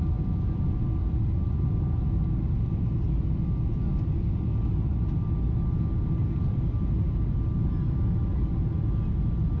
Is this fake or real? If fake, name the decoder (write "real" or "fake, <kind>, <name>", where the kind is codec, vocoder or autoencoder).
real